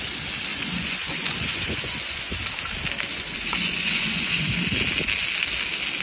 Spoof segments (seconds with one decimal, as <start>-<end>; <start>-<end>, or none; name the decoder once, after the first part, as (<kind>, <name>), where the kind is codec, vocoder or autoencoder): 0.5-2.4 (vocoder, Vocos); 3.1-4.5